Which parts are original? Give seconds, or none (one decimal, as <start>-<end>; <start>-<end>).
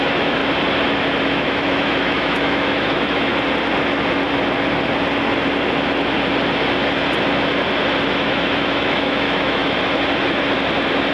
0.4-1.3; 3.3-8.1; 9.6-11.1